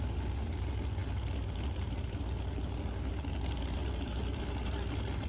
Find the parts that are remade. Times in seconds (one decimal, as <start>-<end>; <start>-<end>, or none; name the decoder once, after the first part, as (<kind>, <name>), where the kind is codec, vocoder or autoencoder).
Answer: none

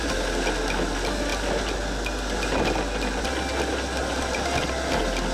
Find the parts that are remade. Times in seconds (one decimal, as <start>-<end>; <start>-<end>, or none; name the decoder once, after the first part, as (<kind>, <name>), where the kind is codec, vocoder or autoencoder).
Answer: 4.0-4.6 (vocoder, BigVGAN v2)

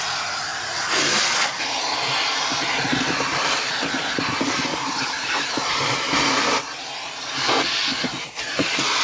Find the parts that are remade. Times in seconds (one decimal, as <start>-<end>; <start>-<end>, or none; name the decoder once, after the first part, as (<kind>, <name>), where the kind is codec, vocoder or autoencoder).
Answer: 4.7-5.5 (vocoder, BigVGAN v2)

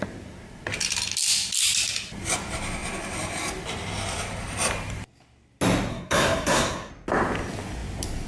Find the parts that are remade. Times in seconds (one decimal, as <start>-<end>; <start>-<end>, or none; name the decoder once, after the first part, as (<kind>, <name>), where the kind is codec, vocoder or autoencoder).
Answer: 5.9-6.9 (codec, SNAC)